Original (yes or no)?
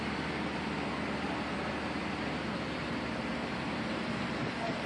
yes